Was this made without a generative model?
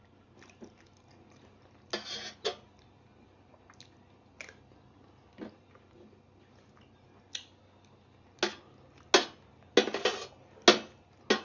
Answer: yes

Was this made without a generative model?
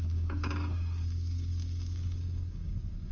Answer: no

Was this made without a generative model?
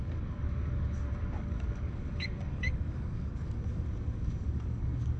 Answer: no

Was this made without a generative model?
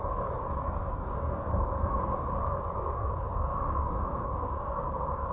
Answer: no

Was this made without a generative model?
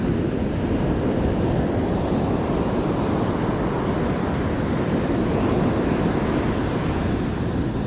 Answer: yes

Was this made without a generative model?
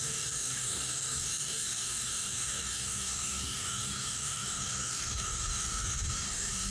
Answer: no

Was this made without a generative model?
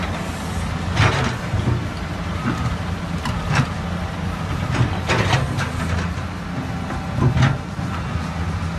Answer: yes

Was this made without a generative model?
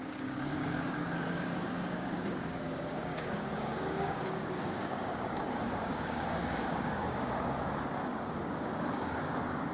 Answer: no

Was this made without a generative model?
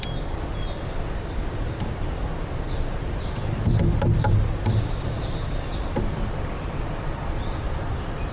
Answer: yes